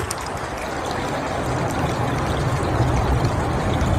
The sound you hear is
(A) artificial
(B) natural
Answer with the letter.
B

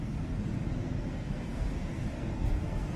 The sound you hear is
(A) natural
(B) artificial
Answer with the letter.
B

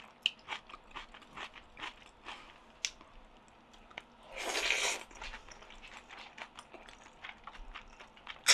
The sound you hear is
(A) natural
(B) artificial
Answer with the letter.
A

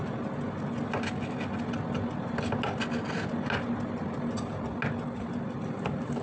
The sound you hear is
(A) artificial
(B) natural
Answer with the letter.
B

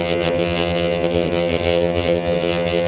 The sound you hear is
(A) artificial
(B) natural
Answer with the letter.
A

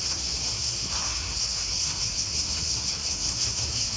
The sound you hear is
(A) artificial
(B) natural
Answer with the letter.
A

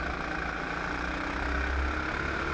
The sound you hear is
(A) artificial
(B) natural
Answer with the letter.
B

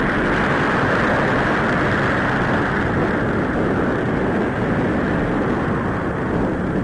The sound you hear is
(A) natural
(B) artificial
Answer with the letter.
A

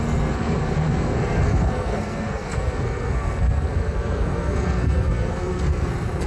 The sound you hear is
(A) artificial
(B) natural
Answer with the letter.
A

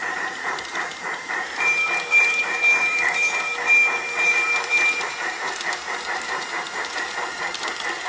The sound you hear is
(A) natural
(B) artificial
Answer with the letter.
B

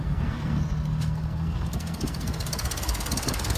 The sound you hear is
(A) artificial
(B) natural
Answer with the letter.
A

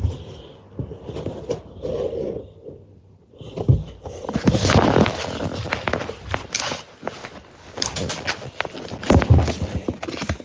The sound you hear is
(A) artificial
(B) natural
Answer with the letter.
B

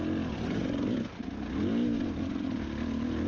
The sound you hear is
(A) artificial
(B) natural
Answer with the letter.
B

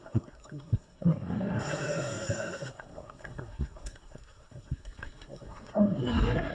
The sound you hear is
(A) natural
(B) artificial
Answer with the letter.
B